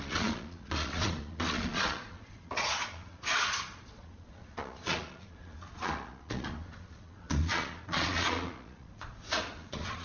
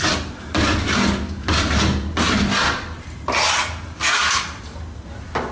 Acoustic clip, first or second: second